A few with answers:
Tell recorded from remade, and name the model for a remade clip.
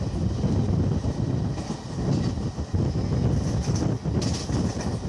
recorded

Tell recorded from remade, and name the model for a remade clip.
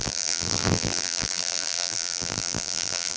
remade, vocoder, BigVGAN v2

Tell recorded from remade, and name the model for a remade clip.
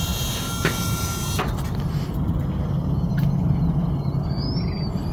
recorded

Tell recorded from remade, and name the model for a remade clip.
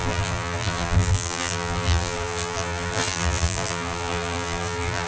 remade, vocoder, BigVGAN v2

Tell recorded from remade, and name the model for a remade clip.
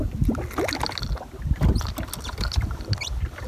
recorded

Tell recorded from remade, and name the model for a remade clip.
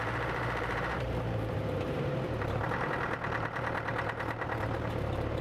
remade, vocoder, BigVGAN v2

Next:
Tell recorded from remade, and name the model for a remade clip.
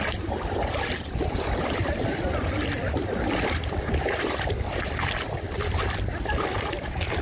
remade, vocoder, BigVGAN v2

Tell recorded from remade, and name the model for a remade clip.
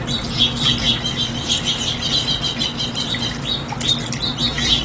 recorded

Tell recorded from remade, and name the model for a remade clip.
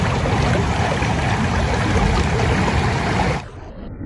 recorded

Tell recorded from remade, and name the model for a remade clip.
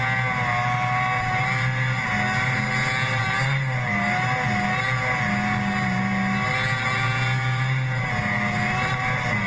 recorded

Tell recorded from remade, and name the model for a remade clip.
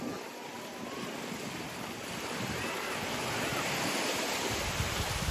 remade, vocoder, BigVGAN v2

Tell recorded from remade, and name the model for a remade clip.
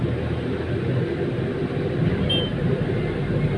recorded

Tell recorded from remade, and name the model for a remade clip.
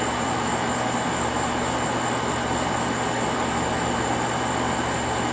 recorded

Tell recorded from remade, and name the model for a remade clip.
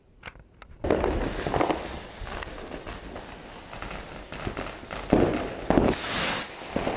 recorded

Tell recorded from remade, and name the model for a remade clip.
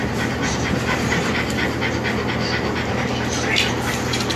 recorded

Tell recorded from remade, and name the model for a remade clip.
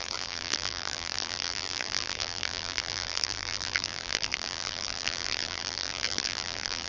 remade, vocoder, BigVGAN v2